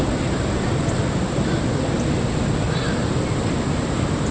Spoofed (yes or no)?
no